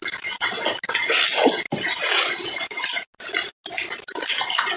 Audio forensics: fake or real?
real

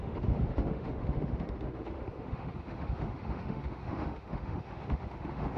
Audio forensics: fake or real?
fake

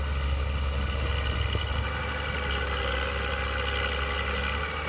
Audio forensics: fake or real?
real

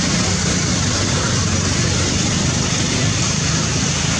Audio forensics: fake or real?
real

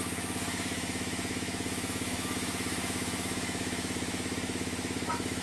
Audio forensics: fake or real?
fake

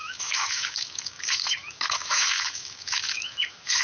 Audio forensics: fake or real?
fake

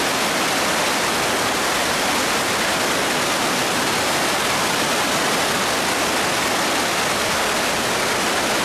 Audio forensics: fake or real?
real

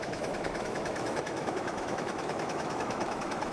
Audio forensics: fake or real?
fake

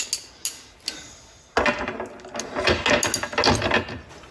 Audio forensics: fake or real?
real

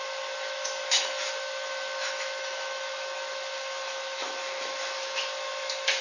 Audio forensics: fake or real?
fake